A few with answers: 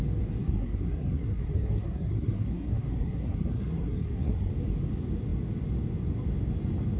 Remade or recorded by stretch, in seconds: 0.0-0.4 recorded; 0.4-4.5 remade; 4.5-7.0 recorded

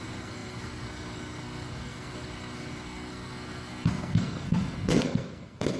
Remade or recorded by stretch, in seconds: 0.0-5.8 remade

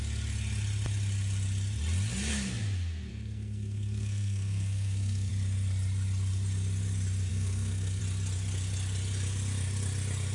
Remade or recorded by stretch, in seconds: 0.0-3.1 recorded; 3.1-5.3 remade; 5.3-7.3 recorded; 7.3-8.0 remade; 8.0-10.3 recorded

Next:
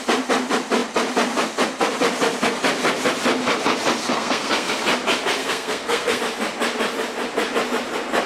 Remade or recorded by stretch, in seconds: 0.0-4.0 recorded; 4.0-4.7 remade; 4.7-5.4 recorded; 5.4-6.2 remade; 6.2-8.3 recorded

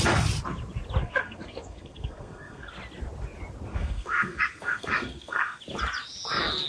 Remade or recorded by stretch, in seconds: 0.0-1.0 recorded; 1.0-2.7 remade; 2.7-3.7 recorded; 3.7-5.6 remade; 5.6-6.7 recorded

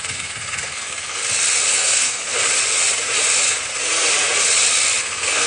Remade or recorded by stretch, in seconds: 0.0-1.2 remade; 1.2-1.7 recorded; 1.7-2.2 remade; 2.2-5.0 recorded; 5.0-5.5 remade

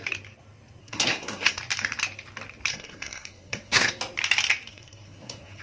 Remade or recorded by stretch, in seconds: 0.0-0.8 recorded; 0.8-1.6 remade; 1.6-2.7 recorded; 2.7-3.9 remade; 3.9-4.7 recorded; 4.7-5.6 remade